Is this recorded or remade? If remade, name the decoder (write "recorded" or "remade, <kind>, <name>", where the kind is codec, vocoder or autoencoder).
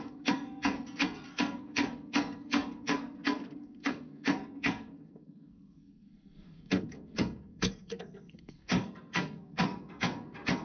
remade, codec, SNAC